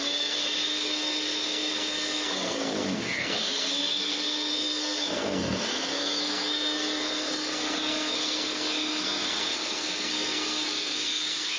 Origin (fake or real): fake